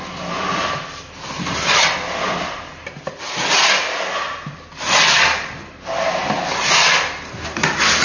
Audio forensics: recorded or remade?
recorded